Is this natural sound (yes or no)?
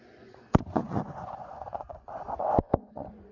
no